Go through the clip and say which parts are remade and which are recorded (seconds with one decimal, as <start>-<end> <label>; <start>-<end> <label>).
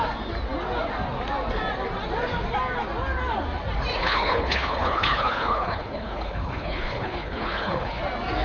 0.0-4.0 recorded; 4.0-8.0 remade; 8.0-8.4 recorded